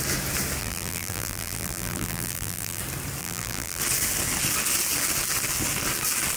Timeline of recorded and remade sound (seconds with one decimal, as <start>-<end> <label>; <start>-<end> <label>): 0.0-0.6 recorded; 0.6-2.8 remade; 2.8-3.2 recorded; 3.2-3.8 remade; 3.8-6.4 recorded